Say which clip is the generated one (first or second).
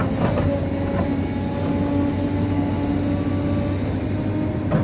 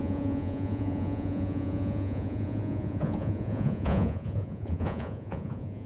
second